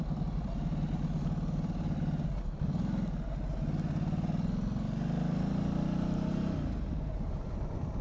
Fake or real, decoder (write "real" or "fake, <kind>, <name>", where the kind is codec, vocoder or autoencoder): real